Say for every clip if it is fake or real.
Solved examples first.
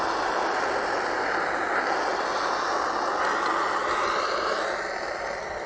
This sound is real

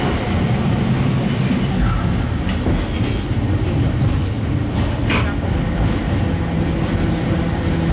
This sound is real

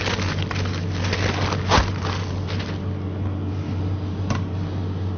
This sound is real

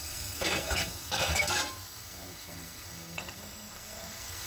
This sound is fake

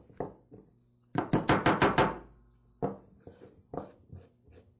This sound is real